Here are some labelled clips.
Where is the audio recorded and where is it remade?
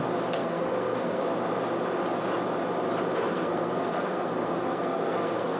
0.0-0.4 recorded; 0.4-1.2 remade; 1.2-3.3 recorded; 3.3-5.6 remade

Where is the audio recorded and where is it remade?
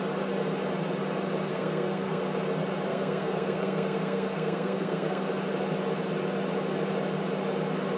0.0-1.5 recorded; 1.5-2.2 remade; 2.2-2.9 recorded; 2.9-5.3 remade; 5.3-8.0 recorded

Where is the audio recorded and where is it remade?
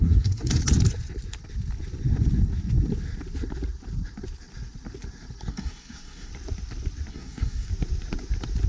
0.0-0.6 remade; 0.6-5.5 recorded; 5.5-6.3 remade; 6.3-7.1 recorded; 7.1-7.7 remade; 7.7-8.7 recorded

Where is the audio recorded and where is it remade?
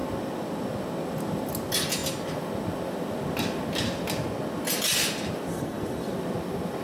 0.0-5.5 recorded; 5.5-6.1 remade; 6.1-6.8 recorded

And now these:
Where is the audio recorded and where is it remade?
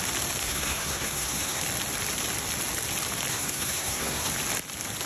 0.0-0.4 recorded; 0.4-1.6 remade; 1.6-3.3 recorded; 3.3-4.3 remade; 4.3-5.1 recorded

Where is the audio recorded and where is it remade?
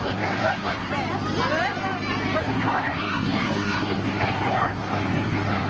0.0-0.9 remade; 0.9-2.4 recorded; 2.4-5.7 remade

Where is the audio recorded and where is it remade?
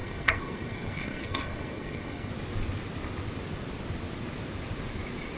0.0-2.3 remade; 2.3-5.4 recorded